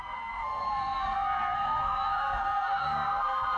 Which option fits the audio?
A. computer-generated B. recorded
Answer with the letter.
A